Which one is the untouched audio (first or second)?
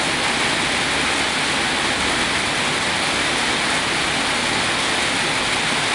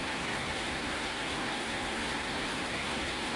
first